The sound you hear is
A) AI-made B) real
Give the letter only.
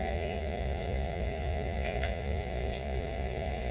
A